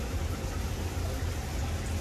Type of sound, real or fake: real